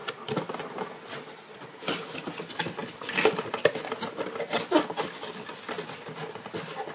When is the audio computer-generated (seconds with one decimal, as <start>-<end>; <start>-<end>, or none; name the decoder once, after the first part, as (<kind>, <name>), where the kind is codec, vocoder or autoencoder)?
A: none